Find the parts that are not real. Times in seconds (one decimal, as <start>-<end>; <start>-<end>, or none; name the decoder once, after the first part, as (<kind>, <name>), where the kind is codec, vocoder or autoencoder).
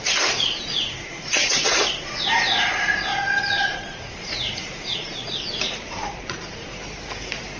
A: 0.0-6.7 (vocoder, Vocos)